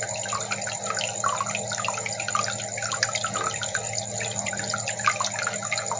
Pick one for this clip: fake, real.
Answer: real